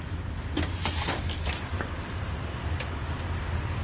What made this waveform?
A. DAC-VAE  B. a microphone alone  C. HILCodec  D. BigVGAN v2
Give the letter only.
B